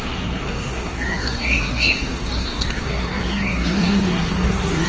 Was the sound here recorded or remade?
remade